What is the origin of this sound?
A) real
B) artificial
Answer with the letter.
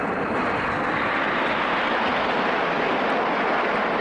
A